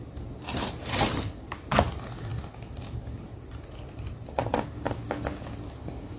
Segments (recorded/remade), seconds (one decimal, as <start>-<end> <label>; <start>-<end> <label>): 0.0-6.2 recorded